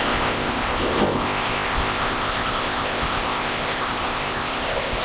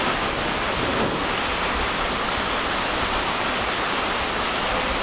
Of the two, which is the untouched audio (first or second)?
second